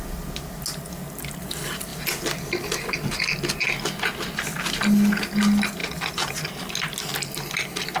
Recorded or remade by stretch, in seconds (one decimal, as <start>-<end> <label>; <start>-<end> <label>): 0.0-8.0 recorded